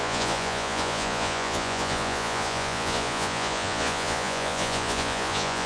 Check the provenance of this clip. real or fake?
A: fake